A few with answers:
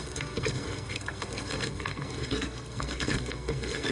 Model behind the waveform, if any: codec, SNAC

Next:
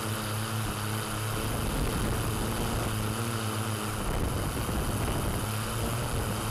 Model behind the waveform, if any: none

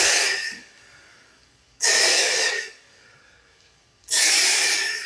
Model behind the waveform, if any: codec, DAC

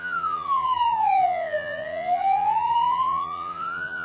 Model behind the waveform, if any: vocoder, Vocos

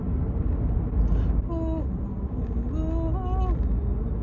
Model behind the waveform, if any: none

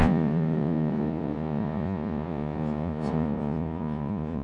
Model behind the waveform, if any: vocoder, Vocos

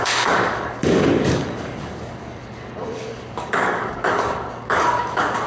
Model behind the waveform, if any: codec, DAC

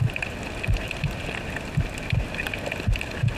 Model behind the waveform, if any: none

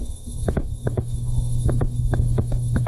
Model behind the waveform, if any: autoencoder, DAC-VAE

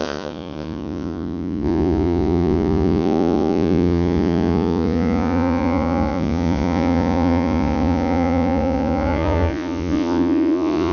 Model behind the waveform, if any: vocoder, Vocos